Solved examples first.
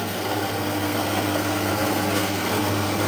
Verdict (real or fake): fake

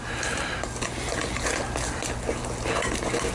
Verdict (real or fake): real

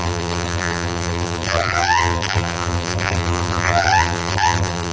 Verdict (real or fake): fake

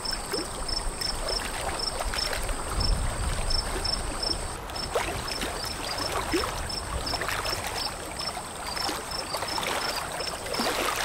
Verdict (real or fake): real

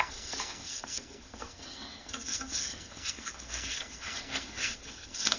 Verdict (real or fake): fake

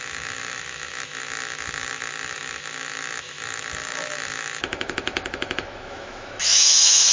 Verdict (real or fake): fake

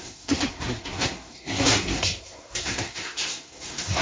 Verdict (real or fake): fake